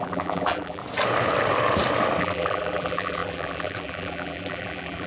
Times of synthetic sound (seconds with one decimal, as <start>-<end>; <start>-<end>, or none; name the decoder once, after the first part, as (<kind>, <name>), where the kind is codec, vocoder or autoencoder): 0.0-0.8 (vocoder, BigVGAN v2); 2.2-5.1